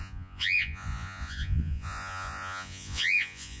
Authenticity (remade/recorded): remade